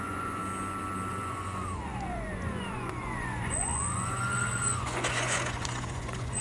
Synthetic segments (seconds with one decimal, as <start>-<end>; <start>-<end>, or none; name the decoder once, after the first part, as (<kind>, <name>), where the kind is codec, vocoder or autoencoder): 0.0-0.4 (vocoder, Vocos); 1.1-6.4